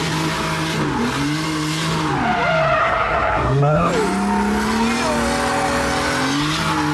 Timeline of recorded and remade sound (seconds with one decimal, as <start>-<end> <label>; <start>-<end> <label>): 0.0-2.8 recorded; 2.8-3.9 remade; 3.9-6.9 recorded